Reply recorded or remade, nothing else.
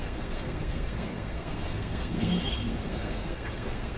remade